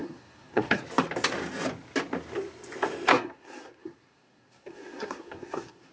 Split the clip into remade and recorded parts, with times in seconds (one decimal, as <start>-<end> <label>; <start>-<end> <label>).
0.0-0.8 remade; 0.8-3.1 recorded; 3.1-5.9 remade